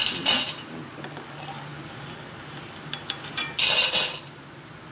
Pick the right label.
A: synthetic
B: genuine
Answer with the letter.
B